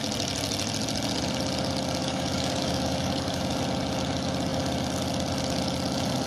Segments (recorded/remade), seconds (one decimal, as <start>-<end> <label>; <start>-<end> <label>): 0.0-2.0 recorded; 2.0-3.4 remade; 3.4-6.3 recorded

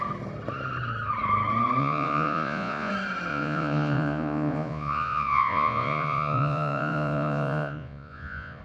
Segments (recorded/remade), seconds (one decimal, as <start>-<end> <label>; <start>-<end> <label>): 0.0-1.8 recorded; 1.8-2.9 remade; 2.9-3.3 recorded; 3.3-8.6 remade

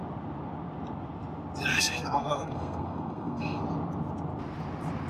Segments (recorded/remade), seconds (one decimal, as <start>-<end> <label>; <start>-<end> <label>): 0.0-1.7 recorded; 1.7-3.6 remade; 3.6-5.1 recorded

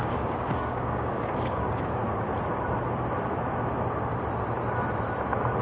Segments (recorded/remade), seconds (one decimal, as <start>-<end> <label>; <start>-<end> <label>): 0.0-2.0 remade; 2.0-5.6 recorded